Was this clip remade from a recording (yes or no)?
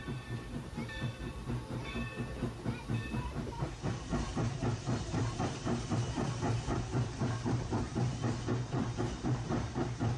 yes